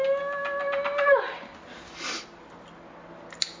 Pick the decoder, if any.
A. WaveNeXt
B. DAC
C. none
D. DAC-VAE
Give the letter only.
C